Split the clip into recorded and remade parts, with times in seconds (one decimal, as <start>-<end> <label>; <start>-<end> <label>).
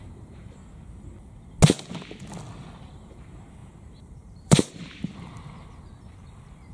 0.0-0.6 remade; 0.6-2.8 recorded; 2.8-6.7 remade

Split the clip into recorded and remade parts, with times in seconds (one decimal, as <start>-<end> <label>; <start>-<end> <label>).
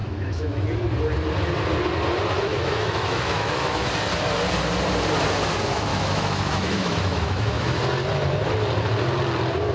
0.0-0.6 remade; 0.6-2.5 recorded; 2.5-3.9 remade; 3.9-5.9 recorded; 5.9-7.8 remade; 7.8-9.7 recorded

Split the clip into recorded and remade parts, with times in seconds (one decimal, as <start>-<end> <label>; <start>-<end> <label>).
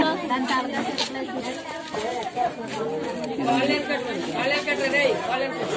0.0-5.8 recorded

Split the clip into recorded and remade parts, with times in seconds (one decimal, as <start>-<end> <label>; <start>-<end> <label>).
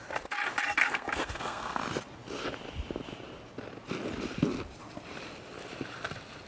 0.0-0.8 recorded; 0.8-1.8 remade; 1.8-6.5 recorded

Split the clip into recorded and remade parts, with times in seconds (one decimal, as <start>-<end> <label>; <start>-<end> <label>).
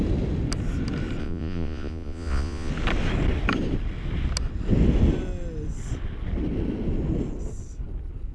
0.0-1.2 recorded; 1.2-2.7 remade; 2.7-8.3 recorded